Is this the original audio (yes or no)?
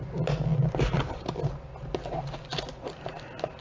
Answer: yes